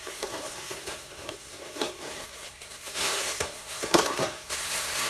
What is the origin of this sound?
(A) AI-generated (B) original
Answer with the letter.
A